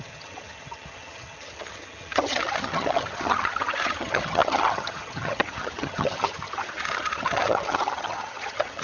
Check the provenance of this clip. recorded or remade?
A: remade